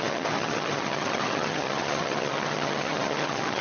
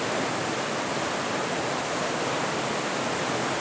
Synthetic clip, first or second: first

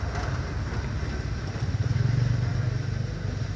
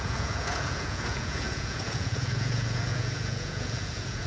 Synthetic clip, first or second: second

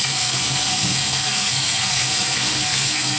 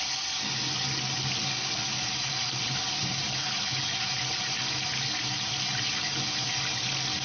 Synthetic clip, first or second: first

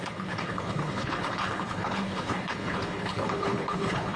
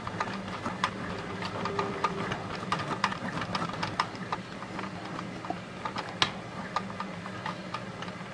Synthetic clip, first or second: first